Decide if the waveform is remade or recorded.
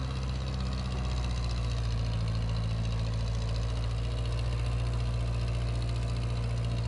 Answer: recorded